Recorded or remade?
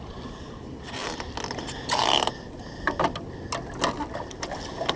recorded